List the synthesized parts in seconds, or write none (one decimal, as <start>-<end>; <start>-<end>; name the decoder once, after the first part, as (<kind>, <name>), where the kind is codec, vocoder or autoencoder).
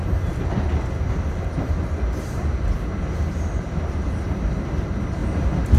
none